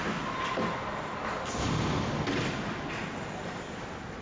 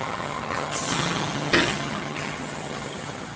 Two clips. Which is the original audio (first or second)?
first